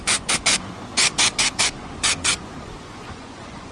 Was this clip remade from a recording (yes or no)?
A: yes